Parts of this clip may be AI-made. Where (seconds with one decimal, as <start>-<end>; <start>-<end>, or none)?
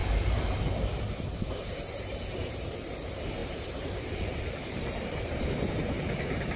0.0-6.6